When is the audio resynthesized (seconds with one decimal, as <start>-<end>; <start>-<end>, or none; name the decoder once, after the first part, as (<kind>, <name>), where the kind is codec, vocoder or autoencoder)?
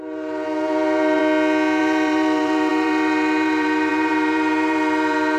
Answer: 0.0-1.2 (vocoder, BigVGAN v2); 1.8-5.4